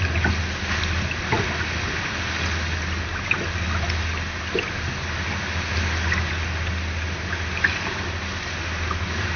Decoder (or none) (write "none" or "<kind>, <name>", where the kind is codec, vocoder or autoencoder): none